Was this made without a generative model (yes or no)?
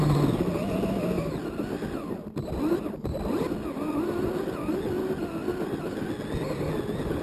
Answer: yes